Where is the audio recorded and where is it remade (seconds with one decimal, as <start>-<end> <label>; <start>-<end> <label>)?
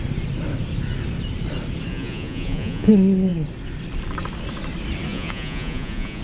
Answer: 0.0-1.9 recorded; 1.9-2.9 remade; 2.9-5.1 recorded; 5.1-6.2 remade